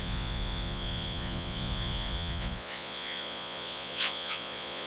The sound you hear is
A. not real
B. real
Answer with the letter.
A